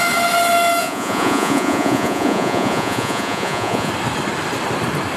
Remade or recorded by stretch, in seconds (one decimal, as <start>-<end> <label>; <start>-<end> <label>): 0.0-0.8 recorded; 0.8-3.9 remade; 3.9-5.2 recorded